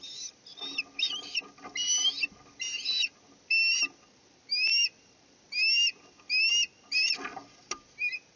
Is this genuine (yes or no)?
yes